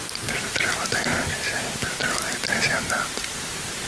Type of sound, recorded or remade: recorded